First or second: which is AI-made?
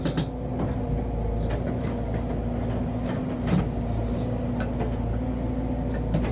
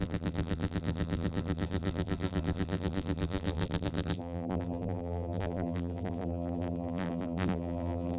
second